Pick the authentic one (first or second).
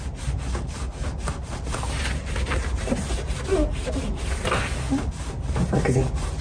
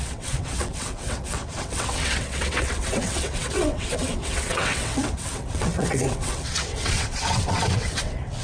first